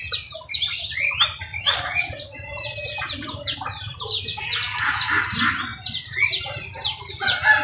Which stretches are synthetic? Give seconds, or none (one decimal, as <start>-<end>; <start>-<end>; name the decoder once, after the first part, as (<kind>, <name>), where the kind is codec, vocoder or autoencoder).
1.5-2.5 (vocoder, Vocos); 4.3-4.9